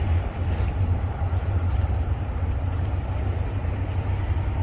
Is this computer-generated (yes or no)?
no